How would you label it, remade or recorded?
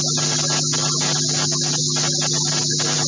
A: recorded